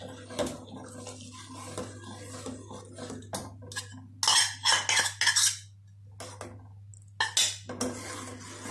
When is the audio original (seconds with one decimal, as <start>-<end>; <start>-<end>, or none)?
0.0-8.7